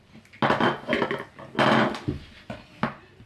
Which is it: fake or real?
real